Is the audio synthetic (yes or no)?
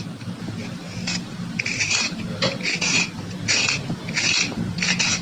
yes